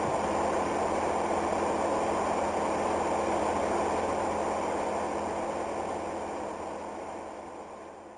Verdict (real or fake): real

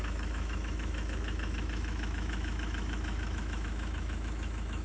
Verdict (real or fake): fake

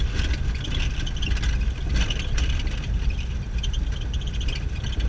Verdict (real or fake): real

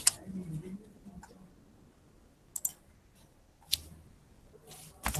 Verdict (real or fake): real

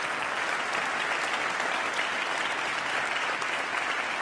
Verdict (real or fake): real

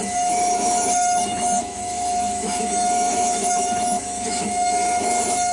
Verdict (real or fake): fake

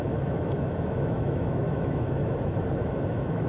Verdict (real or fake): fake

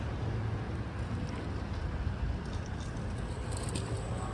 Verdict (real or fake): real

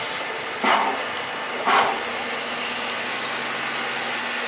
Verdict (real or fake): real